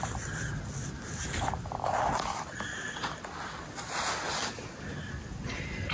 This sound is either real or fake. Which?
real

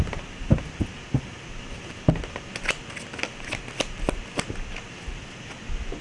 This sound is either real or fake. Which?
real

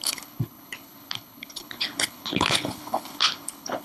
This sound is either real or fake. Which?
fake